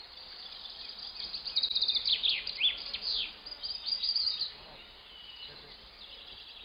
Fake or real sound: fake